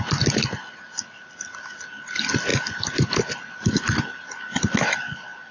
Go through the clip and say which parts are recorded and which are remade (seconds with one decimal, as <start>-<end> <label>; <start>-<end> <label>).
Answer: 0.0-5.5 recorded